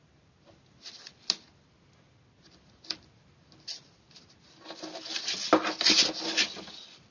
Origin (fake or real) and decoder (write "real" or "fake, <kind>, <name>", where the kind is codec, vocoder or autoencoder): real